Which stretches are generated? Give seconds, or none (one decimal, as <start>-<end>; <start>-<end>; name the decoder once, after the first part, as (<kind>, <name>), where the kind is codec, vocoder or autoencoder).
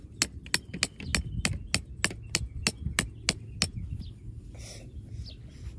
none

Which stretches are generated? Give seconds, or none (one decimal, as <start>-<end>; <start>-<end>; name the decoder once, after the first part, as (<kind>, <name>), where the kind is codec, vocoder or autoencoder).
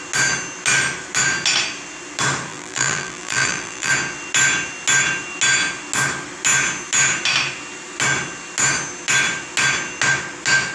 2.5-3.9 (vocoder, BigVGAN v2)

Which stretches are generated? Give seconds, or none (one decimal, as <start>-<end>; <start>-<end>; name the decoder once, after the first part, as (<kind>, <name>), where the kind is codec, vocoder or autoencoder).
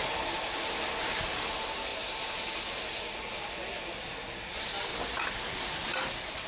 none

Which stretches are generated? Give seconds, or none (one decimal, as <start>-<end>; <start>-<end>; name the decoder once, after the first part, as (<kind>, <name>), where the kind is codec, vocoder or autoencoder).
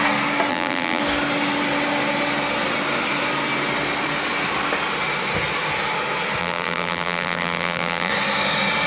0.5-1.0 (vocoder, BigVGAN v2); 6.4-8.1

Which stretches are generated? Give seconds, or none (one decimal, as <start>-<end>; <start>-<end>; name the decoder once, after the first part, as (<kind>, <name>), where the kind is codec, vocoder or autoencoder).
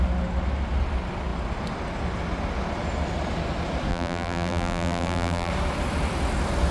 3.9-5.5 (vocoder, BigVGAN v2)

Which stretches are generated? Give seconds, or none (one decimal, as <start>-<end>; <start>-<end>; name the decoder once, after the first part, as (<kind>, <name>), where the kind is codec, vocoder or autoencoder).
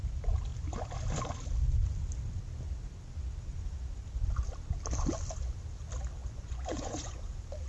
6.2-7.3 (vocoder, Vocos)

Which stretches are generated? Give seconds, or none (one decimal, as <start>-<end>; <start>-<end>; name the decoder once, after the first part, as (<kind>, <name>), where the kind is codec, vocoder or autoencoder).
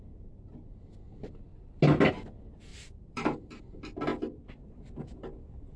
2.7-3.6 (vocoder, BigVGAN v2)